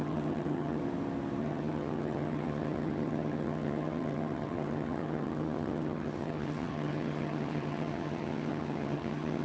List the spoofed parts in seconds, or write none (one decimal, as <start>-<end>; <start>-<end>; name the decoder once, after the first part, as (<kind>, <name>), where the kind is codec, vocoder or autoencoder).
0.0-0.8 (vocoder, HiFi-GAN); 1.4-9.4